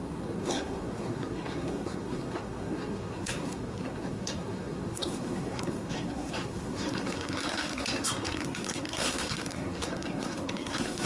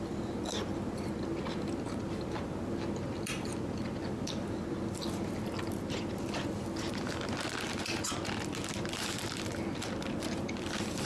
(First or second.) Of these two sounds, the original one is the second